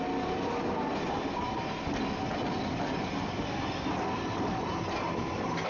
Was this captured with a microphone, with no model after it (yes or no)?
yes